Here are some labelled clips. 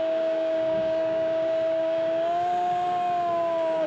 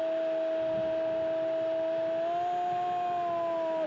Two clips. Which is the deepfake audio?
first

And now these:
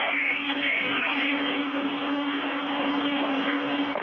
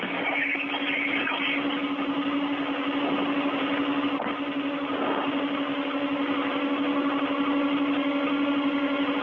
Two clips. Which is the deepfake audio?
first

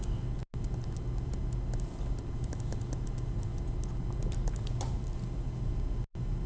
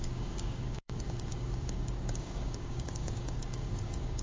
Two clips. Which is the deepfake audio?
second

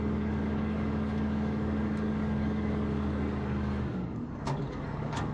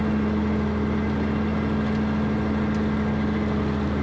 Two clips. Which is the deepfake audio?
first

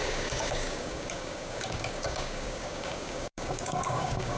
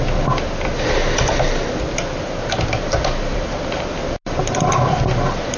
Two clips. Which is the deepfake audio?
first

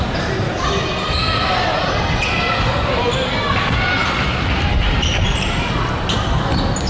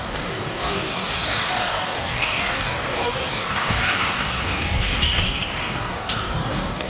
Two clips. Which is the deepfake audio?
second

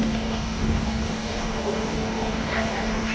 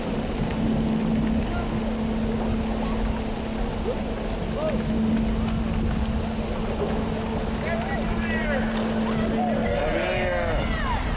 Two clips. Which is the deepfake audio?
first